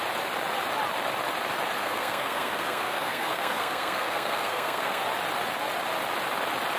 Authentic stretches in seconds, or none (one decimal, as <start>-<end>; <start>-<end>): 0.0-1.8; 5.0-6.8